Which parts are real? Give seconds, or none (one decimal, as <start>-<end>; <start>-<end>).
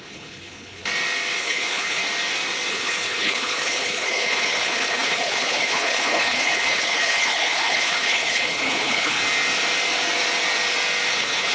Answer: 0.8-1.4; 2.0-2.7; 9.2-11.1